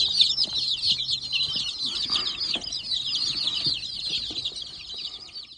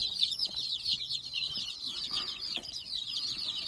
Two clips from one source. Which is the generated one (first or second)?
second